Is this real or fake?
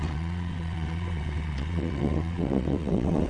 fake